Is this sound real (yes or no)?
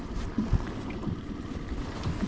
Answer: yes